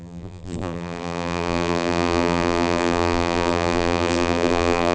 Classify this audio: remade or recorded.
remade